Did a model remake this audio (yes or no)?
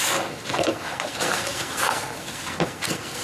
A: yes